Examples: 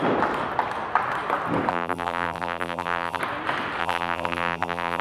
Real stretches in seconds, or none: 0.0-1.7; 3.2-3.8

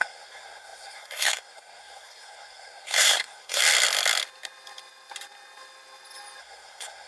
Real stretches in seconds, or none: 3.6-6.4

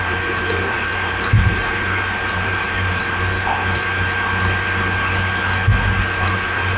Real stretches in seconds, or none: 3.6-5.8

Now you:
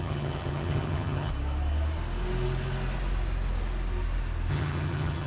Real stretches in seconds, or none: 1.3-4.5

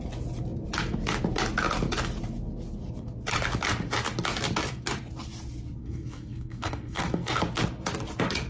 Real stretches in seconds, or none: 0.0-5.8; 7.4-8.5